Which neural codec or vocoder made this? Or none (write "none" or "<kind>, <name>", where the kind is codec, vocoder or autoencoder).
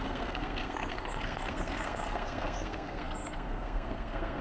codec, SNAC